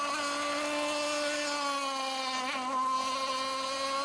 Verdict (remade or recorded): recorded